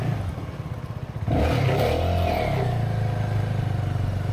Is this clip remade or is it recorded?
recorded